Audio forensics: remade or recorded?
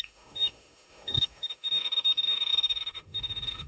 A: remade